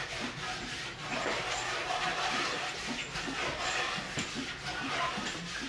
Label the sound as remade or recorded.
recorded